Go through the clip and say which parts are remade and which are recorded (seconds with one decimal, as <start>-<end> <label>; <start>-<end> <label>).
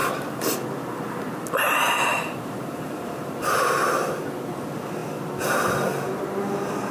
0.0-0.5 remade; 0.5-2.1 recorded; 2.1-3.8 remade; 3.8-6.9 recorded